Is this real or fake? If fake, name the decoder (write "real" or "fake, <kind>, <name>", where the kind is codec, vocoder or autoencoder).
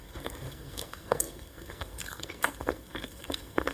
fake, codec, SNAC